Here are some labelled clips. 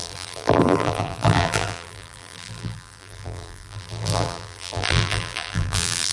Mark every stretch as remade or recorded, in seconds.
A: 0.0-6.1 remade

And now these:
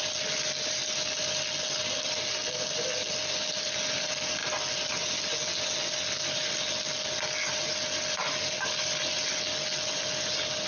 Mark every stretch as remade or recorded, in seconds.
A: 0.0-10.7 recorded

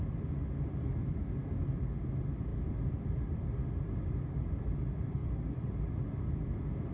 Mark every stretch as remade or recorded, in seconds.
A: 0.0-2.5 recorded; 2.5-3.0 remade; 3.0-5.2 recorded; 5.2-5.9 remade; 5.9-6.9 recorded

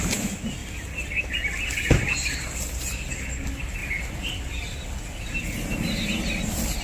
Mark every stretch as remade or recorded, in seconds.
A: 0.0-6.8 recorded

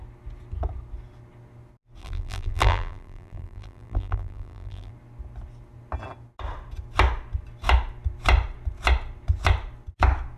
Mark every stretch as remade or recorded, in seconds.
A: 0.0-2.0 recorded; 2.0-4.9 remade; 4.9-10.4 recorded